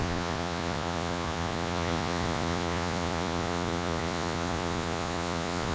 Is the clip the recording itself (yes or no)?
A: no